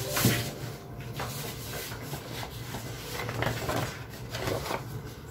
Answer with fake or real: real